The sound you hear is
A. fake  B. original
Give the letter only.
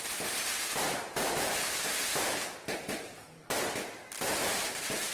A